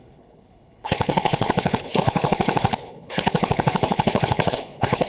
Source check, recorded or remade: remade